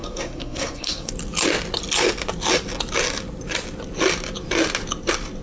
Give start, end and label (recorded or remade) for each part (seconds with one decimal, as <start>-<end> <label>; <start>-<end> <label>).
0.0-1.1 remade; 1.1-5.4 recorded

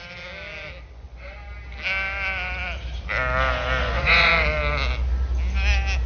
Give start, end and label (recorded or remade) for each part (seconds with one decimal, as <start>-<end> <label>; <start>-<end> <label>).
0.0-0.9 recorded; 0.9-1.4 remade; 1.4-3.8 recorded; 3.8-4.3 remade; 4.3-6.1 recorded

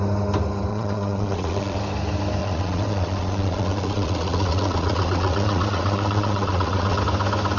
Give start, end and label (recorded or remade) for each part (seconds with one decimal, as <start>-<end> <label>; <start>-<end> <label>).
0.0-0.7 recorded; 0.7-1.8 remade; 1.8-2.4 recorded; 2.4-7.0 remade; 7.0-7.6 recorded

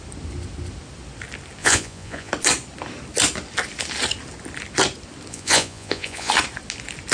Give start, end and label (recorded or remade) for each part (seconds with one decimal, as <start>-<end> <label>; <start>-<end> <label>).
0.0-1.6 recorded; 1.6-2.3 remade; 2.3-5.3 recorded; 5.3-6.3 remade; 6.3-7.1 recorded

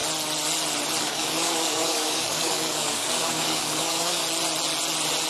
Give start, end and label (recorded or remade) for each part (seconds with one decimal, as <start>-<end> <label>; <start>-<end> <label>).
0.0-1.0 recorded; 1.0-4.2 remade; 4.2-5.3 recorded

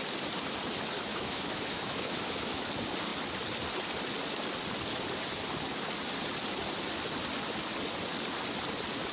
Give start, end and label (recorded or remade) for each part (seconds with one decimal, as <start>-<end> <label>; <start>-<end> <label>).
0.0-1.1 recorded; 1.1-2.7 remade; 2.7-9.1 recorded

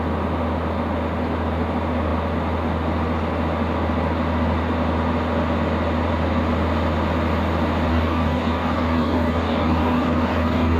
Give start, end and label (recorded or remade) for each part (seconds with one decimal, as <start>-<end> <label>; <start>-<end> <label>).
0.0-7.9 recorded; 7.9-10.8 remade

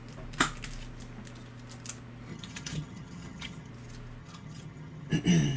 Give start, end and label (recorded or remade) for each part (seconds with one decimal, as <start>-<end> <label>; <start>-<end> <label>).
0.0-2.3 recorded; 2.3-3.7 remade; 3.7-4.2 recorded; 4.2-5.1 remade; 5.1-5.6 recorded